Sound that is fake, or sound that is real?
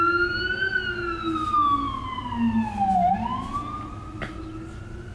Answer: real